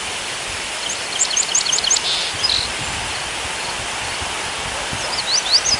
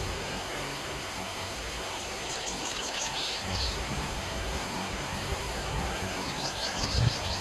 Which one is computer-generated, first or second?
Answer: second